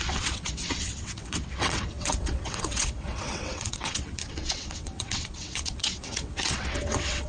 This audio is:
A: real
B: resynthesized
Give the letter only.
B